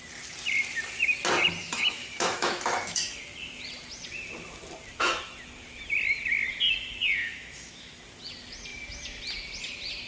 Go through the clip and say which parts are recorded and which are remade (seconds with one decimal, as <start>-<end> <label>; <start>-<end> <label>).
0.0-1.6 recorded; 1.6-3.2 remade; 3.2-7.2 recorded; 7.2-8.0 remade; 8.0-10.1 recorded